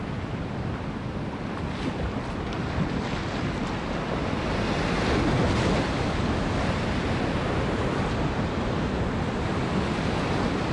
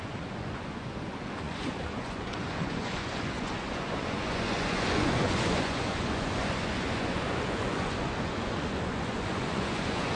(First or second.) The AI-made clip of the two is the second